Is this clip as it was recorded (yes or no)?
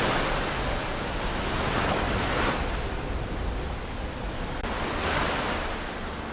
yes